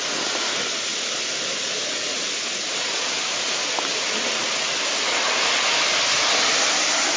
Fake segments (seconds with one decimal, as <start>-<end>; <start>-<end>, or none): none